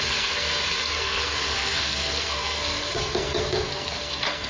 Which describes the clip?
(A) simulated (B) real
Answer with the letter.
A